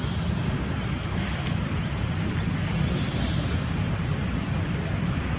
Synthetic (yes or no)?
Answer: no